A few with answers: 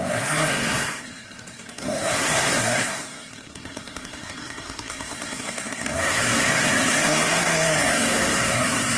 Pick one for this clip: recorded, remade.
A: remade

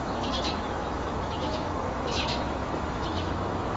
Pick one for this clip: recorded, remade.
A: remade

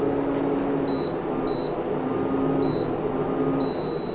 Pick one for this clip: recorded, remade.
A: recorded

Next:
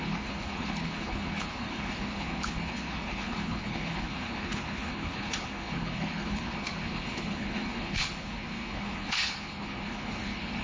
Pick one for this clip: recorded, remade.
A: remade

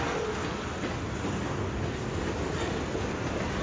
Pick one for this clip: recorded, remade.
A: recorded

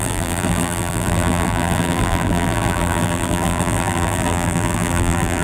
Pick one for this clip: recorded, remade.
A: remade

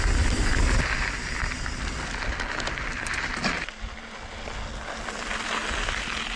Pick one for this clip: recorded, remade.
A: recorded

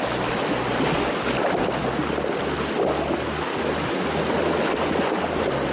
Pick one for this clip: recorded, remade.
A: recorded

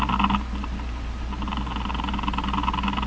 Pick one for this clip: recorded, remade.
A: recorded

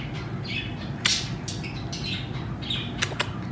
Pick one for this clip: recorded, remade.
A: recorded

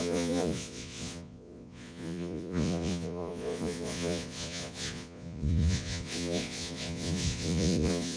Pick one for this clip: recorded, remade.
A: remade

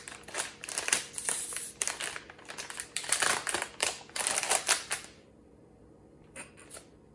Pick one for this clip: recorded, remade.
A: remade